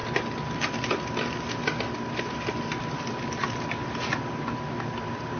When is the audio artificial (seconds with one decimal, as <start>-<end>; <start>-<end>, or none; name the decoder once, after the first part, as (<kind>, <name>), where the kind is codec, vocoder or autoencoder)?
none